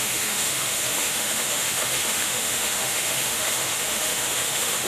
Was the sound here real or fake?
fake